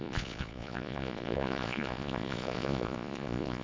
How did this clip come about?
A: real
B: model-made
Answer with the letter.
B